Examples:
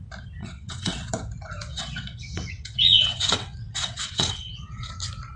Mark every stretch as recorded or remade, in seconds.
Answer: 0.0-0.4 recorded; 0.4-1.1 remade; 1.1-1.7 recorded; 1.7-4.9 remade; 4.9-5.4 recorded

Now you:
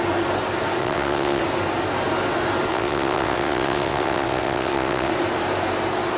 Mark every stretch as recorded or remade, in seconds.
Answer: 0.0-0.8 recorded; 0.8-1.4 remade; 1.4-2.7 recorded; 2.7-5.1 remade; 5.1-6.2 recorded

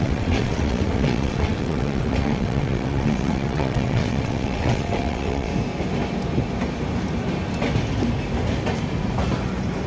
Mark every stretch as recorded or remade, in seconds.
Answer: 0.0-5.5 remade; 5.5-9.9 recorded

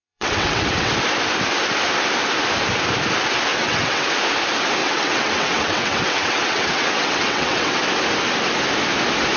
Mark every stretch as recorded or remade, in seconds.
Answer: 0.0-0.9 remade; 0.9-3.5 recorded; 3.5-4.1 remade; 4.1-4.8 recorded; 4.8-7.8 remade; 7.8-9.4 recorded

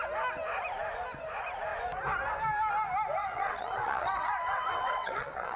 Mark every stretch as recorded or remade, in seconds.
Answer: 0.0-3.2 recorded; 3.2-5.6 remade

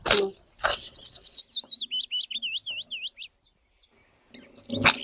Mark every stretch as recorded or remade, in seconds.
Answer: 0.0-0.7 recorded; 0.7-1.4 remade; 1.4-5.0 recorded

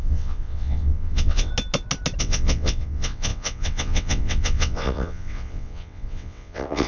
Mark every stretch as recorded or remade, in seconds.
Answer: 0.0-1.5 remade; 1.5-2.2 recorded; 2.2-6.9 remade